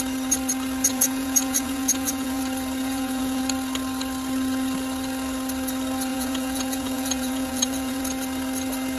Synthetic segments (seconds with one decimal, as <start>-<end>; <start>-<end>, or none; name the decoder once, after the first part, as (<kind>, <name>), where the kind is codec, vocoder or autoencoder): 0.9-2.4 (vocoder, Vocos); 2.8-3.4; 6.1-8.0